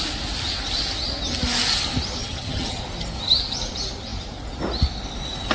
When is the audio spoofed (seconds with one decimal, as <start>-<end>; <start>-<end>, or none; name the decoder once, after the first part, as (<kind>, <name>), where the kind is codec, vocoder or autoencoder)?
2.2-2.8 (vocoder, HiFi-GAN)

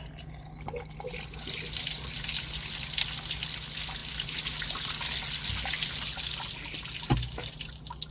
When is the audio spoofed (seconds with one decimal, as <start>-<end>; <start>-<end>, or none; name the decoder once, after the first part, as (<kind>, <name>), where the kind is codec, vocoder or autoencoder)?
none

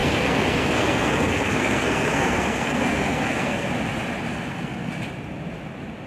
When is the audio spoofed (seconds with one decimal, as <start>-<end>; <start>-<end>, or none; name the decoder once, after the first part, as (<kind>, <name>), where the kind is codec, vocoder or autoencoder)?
0.0-3.7 (codec, SNAC); 4.3-4.9

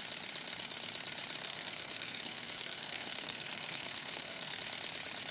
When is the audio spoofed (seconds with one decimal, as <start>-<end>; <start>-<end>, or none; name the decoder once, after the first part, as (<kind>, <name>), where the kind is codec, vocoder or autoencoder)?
1.4-4.6 (codec, SNAC)

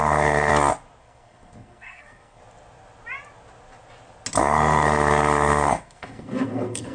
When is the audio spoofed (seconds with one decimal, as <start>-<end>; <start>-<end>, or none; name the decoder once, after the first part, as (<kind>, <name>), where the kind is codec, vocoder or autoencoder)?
0.0-0.5 (codec, SNAC); 1.0-2.4; 4.4-6.9

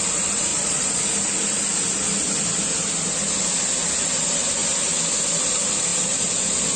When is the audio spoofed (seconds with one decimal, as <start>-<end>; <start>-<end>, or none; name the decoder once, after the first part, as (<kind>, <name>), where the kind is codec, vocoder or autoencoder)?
0.5-1.0 (vocoder, Vocos)

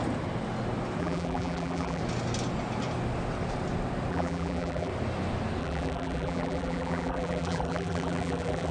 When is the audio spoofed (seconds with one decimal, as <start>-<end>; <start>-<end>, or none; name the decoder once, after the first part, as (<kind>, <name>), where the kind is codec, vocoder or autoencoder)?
1.0-2.0 (vocoder, BigVGAN v2); 4.1-4.9; 5.6-8.7

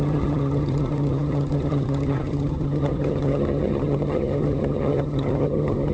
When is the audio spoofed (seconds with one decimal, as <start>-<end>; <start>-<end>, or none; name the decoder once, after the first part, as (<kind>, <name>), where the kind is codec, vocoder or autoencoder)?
0.0-5.9 (vocoder, HiFi-GAN)